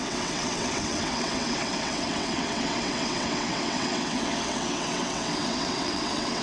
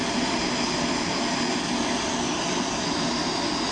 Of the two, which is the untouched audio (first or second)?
second